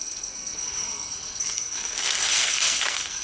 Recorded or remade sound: remade